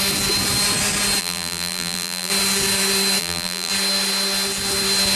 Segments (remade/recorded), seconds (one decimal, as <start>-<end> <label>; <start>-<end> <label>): 0.0-1.2 recorded; 1.2-2.3 remade; 2.3-3.2 recorded; 3.2-3.7 remade; 3.7-5.2 recorded